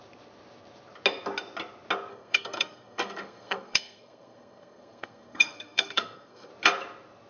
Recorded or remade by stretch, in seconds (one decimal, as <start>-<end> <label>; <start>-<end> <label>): 0.0-2.1 recorded; 2.1-6.5 remade; 6.5-7.3 recorded